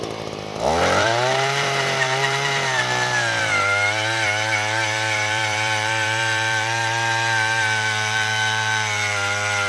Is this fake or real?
fake